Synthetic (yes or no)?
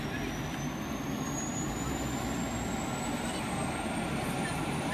no